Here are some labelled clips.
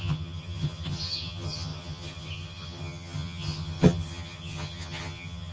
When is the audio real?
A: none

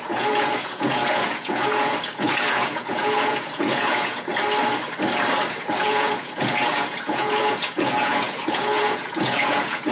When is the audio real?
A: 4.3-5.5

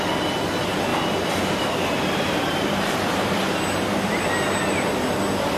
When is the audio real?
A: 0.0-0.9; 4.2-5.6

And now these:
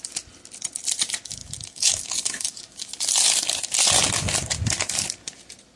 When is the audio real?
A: 0.0-1.4; 2.9-5.8